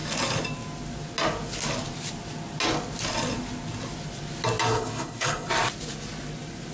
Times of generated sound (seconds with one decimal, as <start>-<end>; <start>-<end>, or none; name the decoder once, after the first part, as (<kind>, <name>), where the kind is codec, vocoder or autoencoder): 4.7-5.5 (codec, HILCodec)